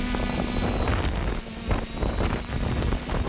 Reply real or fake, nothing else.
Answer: real